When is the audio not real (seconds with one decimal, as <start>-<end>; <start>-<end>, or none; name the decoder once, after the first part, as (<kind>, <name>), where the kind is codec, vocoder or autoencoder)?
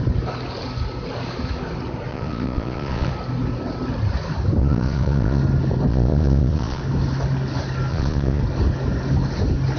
2.1-3.1 (vocoder, Vocos); 4.6-5.4; 5.9-6.8; 7.9-8.4